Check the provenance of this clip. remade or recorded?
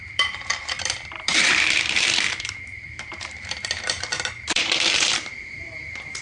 remade